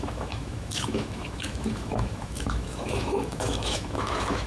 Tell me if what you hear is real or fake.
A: fake